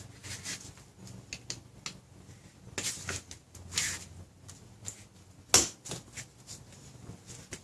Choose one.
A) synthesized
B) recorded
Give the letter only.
B